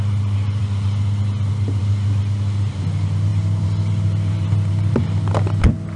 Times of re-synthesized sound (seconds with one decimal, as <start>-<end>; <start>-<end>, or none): none